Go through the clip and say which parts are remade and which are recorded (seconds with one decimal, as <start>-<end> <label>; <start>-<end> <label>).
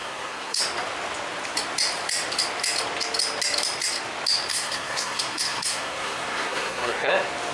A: 0.0-0.6 remade; 0.6-4.5 recorded; 4.5-7.1 remade; 7.1-7.5 recorded